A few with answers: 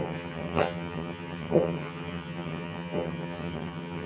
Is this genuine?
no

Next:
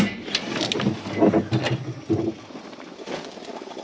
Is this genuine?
yes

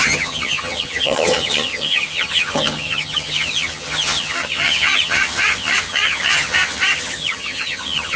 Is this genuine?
no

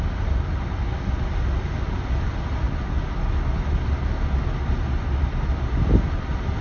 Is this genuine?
yes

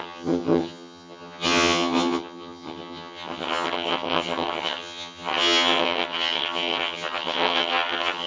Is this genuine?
no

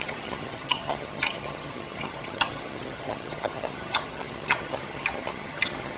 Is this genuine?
no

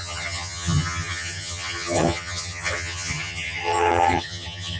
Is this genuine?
no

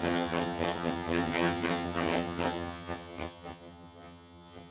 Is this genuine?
no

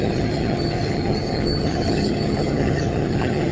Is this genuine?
no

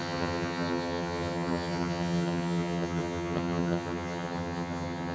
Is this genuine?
no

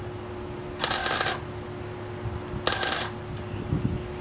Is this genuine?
yes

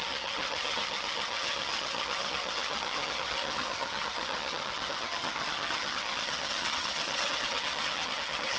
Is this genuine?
no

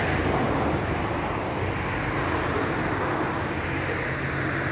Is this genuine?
yes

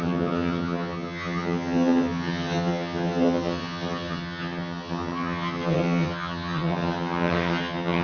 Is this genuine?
no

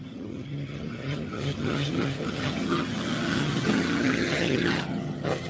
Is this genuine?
no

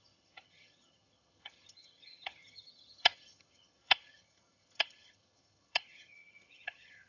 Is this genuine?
no